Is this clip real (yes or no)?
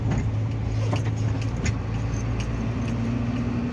yes